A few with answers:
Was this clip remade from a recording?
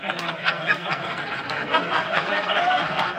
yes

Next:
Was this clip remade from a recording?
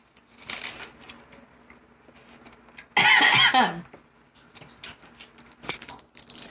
no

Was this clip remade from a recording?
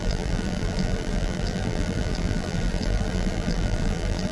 yes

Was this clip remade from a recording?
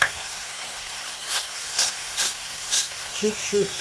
yes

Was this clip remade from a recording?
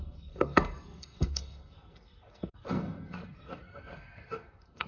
yes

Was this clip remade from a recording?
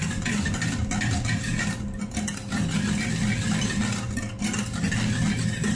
no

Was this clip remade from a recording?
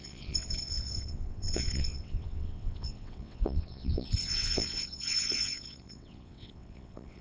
yes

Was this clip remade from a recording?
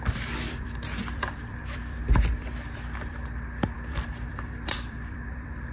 yes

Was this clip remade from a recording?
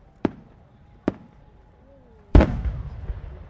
yes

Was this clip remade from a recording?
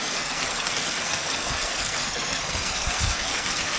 yes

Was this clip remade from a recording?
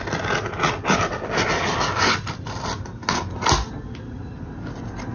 no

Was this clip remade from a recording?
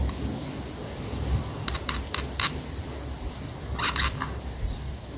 no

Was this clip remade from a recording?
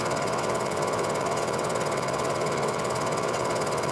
yes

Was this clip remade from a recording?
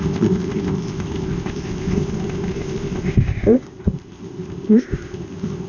yes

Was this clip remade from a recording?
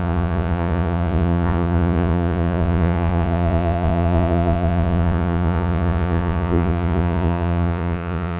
yes